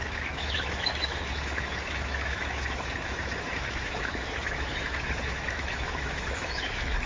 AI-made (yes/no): yes